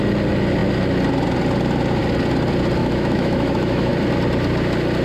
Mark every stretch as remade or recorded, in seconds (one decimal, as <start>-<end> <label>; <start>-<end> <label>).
0.0-2.8 recorded; 2.8-3.9 remade; 3.9-5.0 recorded